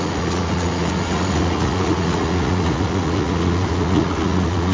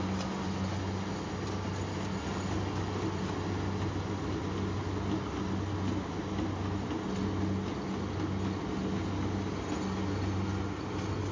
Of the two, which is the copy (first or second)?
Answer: first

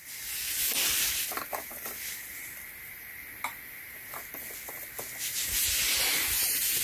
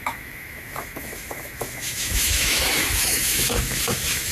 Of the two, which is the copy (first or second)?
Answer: second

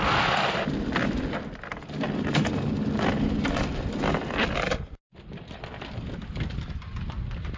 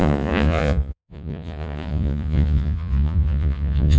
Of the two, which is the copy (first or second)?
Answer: second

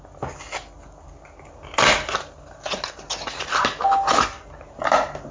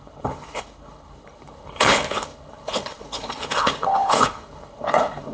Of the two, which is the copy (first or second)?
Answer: second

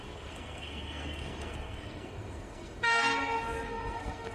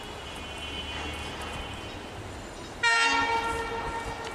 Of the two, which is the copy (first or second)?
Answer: first